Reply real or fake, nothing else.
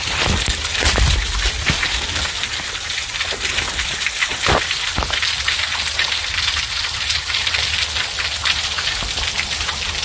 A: real